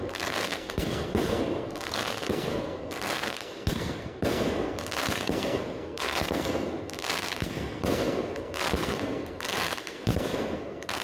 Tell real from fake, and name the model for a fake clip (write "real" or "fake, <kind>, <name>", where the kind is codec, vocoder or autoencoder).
fake, codec, SNAC